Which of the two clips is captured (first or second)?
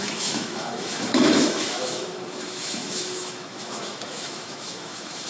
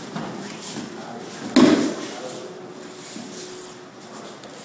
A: second